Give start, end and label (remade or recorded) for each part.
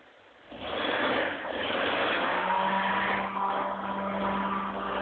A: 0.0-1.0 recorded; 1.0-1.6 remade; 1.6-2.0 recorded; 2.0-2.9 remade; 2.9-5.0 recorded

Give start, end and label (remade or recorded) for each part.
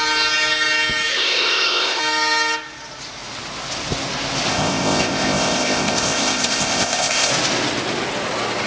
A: 0.0-1.1 recorded; 1.1-2.0 remade; 2.0-4.5 recorded; 4.5-7.3 remade; 7.3-8.7 recorded